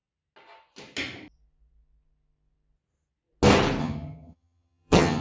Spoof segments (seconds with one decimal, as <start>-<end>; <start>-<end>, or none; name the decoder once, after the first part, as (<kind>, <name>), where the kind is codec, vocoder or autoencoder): 3.8-5.2 (vocoder, HiFi-GAN)